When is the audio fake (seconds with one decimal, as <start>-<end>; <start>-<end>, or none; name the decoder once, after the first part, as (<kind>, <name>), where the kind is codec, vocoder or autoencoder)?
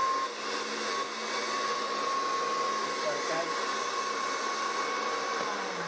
none